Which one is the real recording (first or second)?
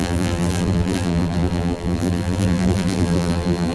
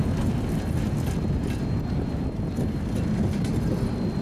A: second